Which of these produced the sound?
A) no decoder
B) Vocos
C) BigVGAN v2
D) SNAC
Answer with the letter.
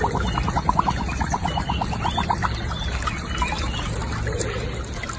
A